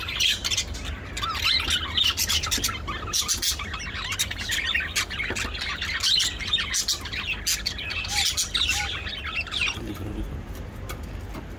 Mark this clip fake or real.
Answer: real